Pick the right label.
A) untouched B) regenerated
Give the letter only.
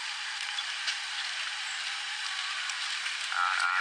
B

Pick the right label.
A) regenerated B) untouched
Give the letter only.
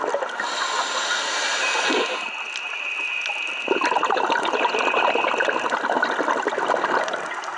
B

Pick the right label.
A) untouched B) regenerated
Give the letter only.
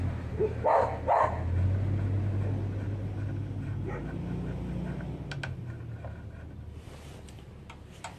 A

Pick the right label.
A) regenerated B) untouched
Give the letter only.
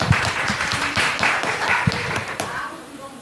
A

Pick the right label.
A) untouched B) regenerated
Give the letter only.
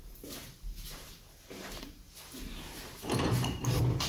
B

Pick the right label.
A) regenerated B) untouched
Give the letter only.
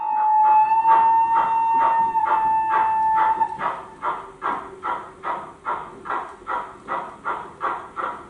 B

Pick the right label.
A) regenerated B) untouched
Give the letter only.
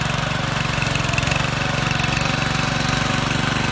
A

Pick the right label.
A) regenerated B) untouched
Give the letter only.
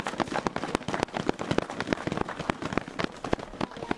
B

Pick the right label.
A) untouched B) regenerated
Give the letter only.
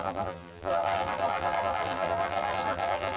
B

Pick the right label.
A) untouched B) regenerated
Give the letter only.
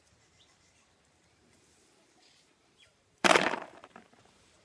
B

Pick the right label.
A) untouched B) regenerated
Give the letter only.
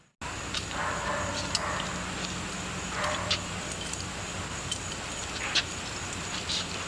A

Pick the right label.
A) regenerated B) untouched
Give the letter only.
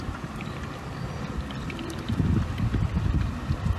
B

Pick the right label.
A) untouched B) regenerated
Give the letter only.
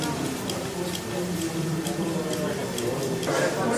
A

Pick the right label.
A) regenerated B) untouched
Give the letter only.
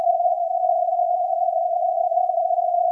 B